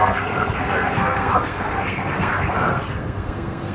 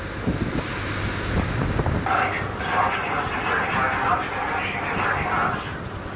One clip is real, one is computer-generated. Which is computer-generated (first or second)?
first